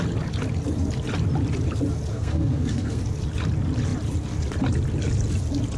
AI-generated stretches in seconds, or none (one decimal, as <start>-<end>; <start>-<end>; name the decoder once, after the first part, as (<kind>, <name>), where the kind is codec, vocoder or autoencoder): 2.1-3.0 (codec, SNAC)